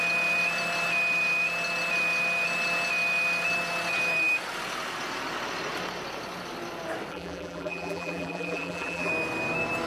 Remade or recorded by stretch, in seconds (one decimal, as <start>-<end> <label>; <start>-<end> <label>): 0.0-7.1 recorded; 7.1-9.1 remade; 9.1-9.9 recorded